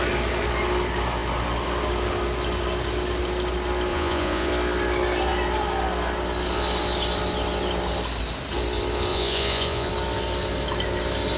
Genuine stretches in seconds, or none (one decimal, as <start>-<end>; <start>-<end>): 0.0-3.9; 4.5-9.1; 9.9-11.4